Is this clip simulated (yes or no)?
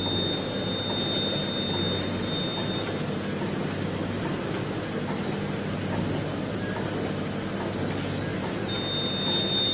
no